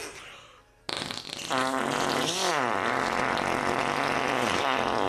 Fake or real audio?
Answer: real